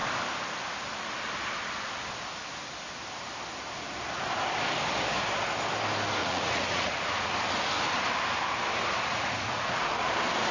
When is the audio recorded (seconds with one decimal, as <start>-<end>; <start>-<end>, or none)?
0.0-6.2; 7.3-9.1; 10.1-10.5